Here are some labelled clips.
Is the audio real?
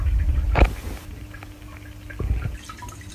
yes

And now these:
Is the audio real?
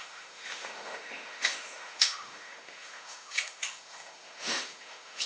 no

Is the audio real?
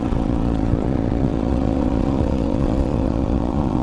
no